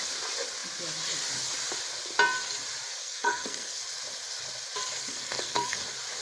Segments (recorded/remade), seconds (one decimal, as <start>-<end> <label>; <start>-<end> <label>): 0.0-3.0 recorded; 3.0-3.8 remade; 3.8-5.0 recorded; 5.0-5.8 remade; 5.8-6.2 recorded